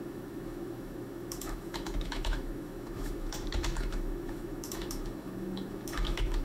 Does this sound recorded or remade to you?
remade